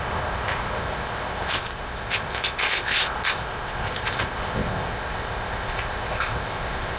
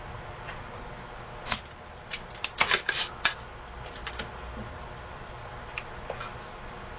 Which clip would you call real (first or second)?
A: second